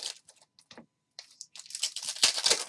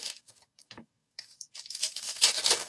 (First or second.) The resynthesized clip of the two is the second